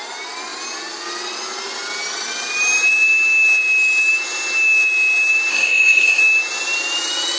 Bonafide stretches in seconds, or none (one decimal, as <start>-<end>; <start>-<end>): 0.0-5.5; 6.2-7.4